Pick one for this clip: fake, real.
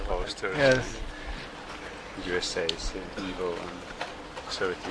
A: real